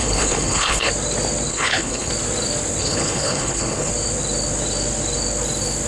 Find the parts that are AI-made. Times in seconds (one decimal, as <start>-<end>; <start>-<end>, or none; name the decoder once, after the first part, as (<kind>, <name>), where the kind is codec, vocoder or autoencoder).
0.0-0.9 (codec, HILCodec); 1.5-2.1; 2.8-3.9